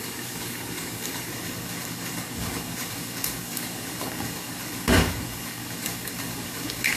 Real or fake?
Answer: fake